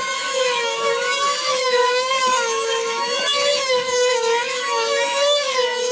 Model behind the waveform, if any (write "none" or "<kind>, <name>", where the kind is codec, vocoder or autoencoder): autoencoder, DAC-VAE